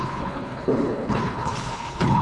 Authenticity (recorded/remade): remade